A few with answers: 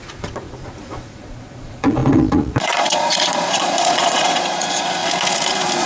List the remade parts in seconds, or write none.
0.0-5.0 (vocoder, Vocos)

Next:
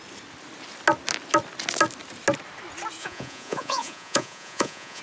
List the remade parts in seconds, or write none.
3.0-5.0 (vocoder, Vocos)

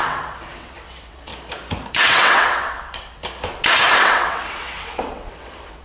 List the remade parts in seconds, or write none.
0.0-1.3 (vocoder, WaveNeXt); 1.9-3.2; 4.0-5.8